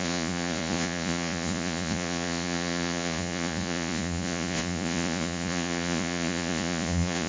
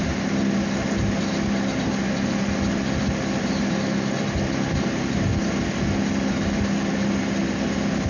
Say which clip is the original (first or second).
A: second